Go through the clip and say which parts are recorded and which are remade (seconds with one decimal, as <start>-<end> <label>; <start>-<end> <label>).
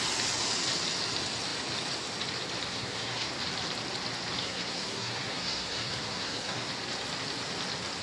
0.0-2.7 recorded; 2.7-3.3 remade; 3.3-4.4 recorded; 4.4-6.7 remade; 6.7-8.0 recorded